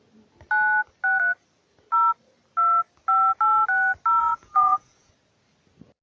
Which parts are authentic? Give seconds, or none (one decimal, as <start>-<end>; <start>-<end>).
0.0-4.2; 5.1-6.0